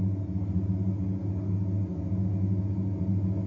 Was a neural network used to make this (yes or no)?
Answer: no